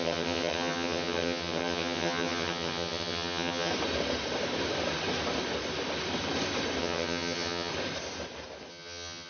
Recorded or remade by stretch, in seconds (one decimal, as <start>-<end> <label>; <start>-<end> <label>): 0.0-3.7 remade; 3.7-6.8 recorded; 6.8-7.7 remade; 7.7-8.7 recorded; 8.7-9.3 remade